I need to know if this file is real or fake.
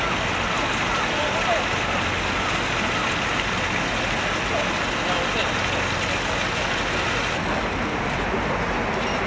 real